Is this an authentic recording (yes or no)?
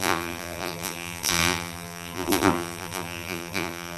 no